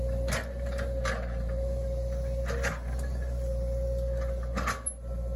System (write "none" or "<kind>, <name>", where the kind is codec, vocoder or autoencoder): none